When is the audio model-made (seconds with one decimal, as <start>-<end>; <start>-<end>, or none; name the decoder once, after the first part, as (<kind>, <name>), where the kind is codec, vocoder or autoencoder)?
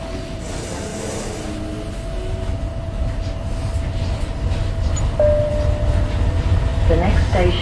none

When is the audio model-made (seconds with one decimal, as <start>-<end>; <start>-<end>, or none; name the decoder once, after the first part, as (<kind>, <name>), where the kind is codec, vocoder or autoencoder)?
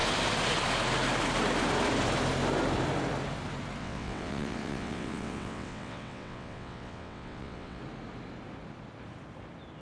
3.8-7.8 (vocoder, WaveNeXt)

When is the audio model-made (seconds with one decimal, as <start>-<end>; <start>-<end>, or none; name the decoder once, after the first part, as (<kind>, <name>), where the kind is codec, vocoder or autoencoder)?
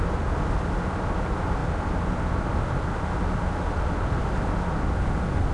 none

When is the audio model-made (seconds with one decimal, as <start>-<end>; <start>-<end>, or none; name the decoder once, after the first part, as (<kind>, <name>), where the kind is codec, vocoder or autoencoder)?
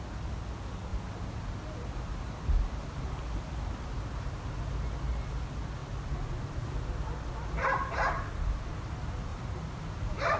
0.9-3.7 (vocoder, BigVGAN v2); 9.3-10.4